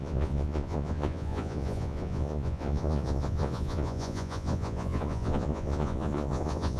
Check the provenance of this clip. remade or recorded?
remade